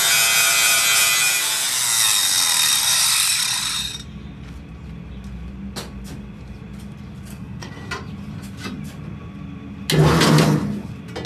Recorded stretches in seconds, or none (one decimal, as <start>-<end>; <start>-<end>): 0.0-7.3; 7.9-11.3